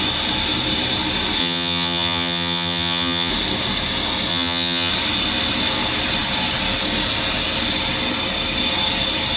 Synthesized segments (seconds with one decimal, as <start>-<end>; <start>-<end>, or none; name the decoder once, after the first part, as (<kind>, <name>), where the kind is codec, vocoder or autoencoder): 1.4-3.3 (vocoder, HiFi-GAN); 4.3-4.9

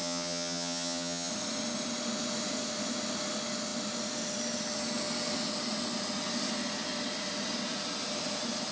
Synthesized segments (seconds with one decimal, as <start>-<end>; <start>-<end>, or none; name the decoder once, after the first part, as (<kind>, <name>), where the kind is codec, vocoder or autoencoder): 0.0-1.3 (vocoder, HiFi-GAN)

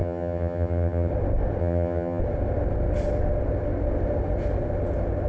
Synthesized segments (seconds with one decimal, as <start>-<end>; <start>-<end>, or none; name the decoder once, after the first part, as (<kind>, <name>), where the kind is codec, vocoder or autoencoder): 0.0-1.1 (vocoder, HiFi-GAN); 1.6-2.2

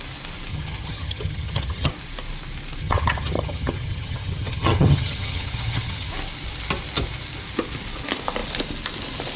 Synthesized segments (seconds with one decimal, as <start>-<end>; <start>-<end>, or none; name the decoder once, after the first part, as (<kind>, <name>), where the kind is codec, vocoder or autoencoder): 0.5-1.9 (vocoder, HiFi-GAN); 2.8-6.1

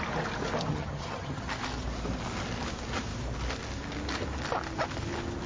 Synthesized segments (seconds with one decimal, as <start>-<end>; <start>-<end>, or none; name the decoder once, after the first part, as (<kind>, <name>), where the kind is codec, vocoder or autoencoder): 0.7-1.5 (vocoder, HiFi-GAN)